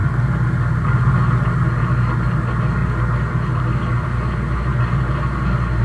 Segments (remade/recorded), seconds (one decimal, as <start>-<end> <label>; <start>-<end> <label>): 0.0-5.8 recorded